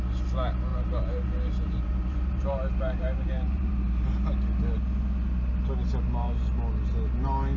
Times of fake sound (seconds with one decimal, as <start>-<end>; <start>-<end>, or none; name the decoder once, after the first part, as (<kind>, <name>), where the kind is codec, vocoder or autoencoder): 0.7-3.7 (vocoder, BigVGAN v2)